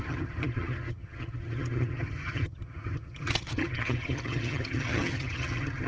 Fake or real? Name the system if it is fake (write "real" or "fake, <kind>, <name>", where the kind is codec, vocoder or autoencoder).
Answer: fake, vocoder, HiFi-GAN